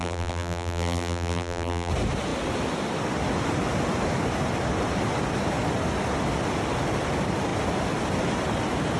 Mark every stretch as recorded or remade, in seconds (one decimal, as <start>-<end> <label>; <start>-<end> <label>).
0.0-1.9 remade; 1.9-9.0 recorded